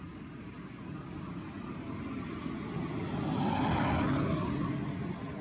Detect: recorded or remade recorded